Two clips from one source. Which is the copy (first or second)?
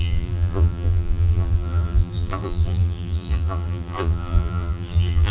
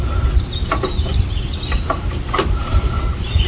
first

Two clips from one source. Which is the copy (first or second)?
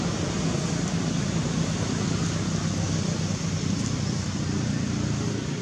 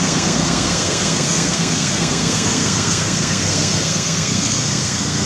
second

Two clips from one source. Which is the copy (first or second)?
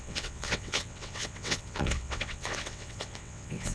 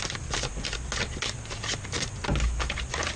first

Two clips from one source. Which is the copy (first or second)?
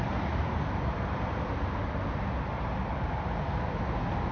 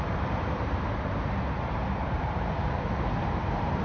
second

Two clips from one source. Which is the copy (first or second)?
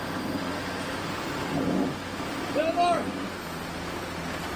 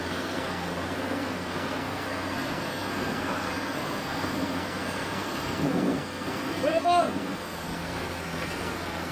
second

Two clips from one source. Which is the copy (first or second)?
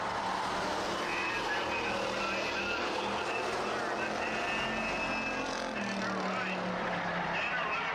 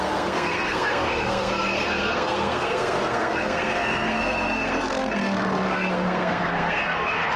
second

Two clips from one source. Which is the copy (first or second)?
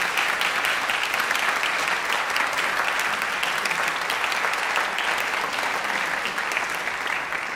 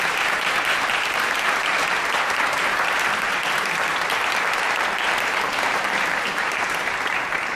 second